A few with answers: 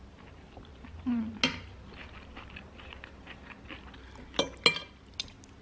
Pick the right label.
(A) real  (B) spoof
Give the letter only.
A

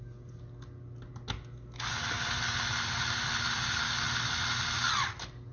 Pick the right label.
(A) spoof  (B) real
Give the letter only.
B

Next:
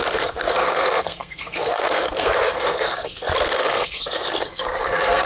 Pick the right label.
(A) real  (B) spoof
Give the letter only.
B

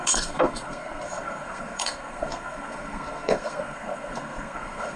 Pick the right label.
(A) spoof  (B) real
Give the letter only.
A